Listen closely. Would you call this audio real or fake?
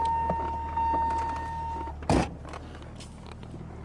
real